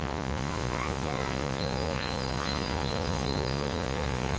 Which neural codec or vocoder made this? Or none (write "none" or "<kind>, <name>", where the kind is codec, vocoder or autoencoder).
vocoder, Vocos